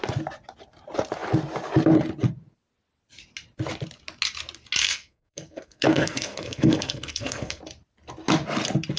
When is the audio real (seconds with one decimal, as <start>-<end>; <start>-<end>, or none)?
0.0-4.8; 7.6-9.0